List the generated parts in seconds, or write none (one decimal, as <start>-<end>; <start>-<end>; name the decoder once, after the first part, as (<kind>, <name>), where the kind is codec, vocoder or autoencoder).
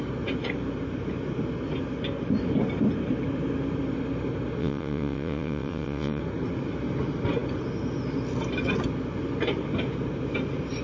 4.6-6.2 (vocoder, WaveNeXt)